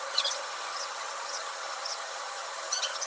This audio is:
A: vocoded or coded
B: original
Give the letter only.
A